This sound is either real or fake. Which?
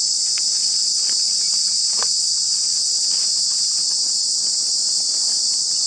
real